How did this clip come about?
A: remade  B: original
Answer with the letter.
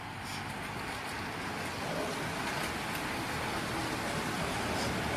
B